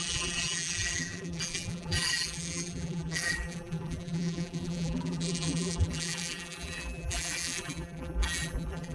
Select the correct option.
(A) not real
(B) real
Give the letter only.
A